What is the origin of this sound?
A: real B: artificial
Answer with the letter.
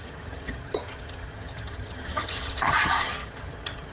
B